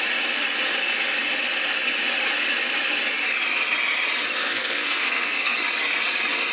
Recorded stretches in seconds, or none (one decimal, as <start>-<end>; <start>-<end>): 0.0-4.4; 5.6-6.5